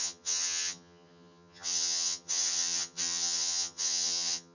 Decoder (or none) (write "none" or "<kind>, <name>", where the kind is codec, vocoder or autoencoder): vocoder, HiFi-GAN